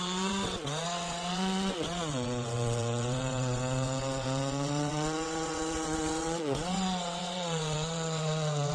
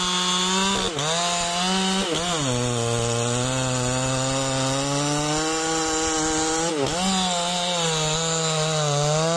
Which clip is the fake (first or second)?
first